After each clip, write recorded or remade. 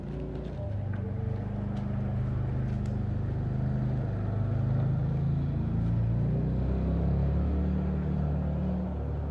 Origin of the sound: recorded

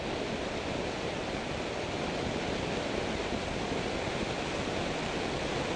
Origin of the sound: recorded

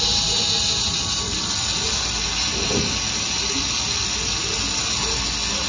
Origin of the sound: recorded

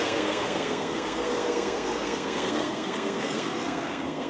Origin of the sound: remade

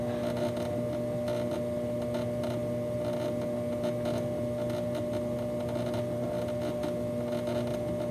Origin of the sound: recorded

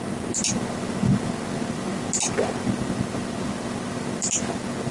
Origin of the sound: recorded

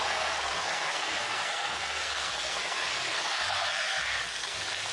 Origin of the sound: remade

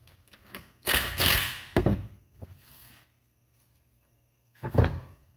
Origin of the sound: remade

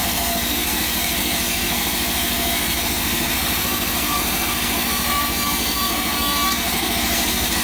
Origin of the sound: remade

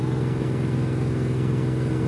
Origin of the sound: remade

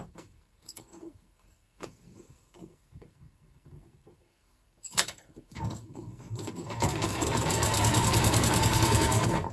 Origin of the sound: remade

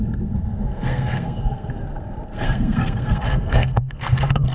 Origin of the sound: remade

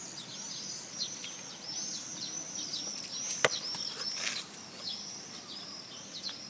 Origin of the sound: recorded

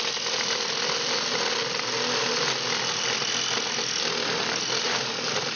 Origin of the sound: recorded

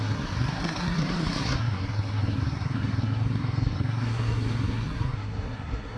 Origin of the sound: remade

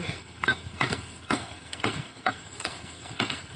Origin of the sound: remade